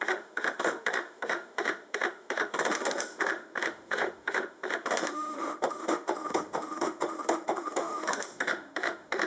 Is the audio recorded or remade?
remade